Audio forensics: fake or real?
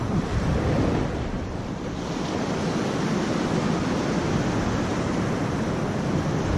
real